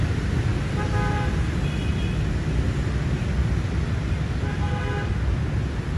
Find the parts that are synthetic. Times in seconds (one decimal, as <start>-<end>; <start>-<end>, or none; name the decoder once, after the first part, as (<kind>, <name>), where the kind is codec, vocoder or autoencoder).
none